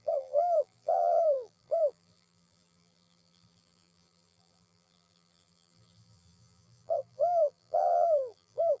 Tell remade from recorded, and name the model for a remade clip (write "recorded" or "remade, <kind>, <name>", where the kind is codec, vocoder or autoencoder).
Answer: remade, vocoder, BigVGAN v2